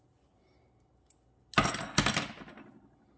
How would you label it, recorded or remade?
recorded